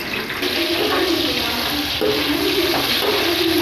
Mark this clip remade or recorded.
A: recorded